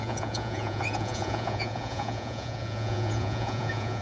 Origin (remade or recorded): remade